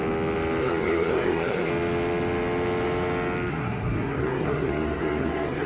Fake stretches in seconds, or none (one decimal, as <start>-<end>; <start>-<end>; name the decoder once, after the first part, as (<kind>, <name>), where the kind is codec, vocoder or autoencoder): 0.6-1.7 (codec, SNAC); 3.5-5.7